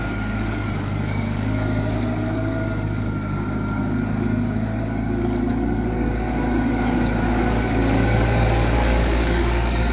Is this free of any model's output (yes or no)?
no